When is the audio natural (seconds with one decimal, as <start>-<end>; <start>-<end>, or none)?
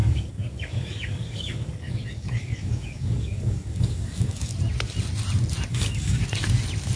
4.5-5.7; 6.2-7.0